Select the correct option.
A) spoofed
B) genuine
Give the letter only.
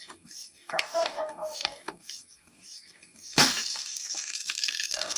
A